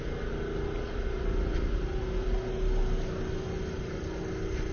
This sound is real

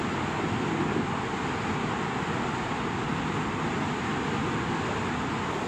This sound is real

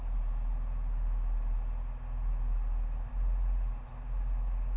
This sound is real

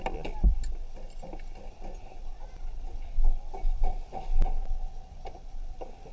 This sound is real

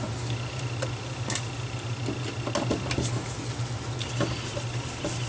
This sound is real